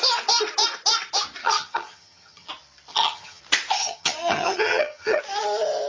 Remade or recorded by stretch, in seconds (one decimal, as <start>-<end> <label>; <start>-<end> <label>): 0.0-1.4 recorded; 1.4-2.5 remade; 2.5-2.9 recorded; 2.9-3.4 remade; 3.4-3.8 recorded; 3.8-5.2 remade; 5.2-5.9 recorded